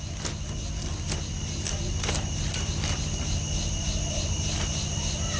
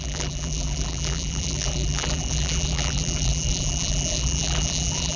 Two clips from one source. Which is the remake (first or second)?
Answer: second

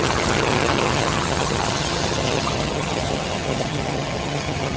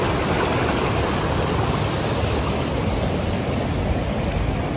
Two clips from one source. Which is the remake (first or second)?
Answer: first